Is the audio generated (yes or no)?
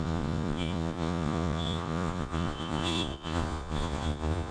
yes